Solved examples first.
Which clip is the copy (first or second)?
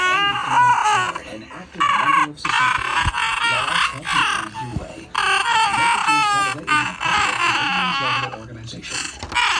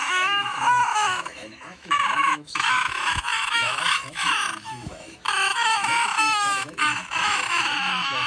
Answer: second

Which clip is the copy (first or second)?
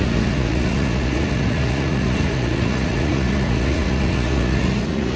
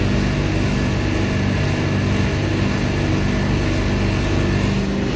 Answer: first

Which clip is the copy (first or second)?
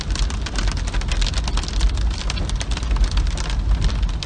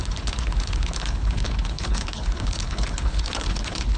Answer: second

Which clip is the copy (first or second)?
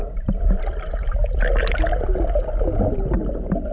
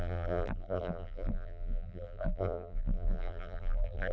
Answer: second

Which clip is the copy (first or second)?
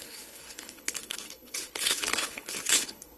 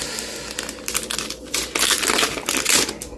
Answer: first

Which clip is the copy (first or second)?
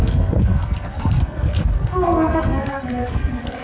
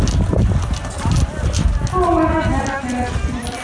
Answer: first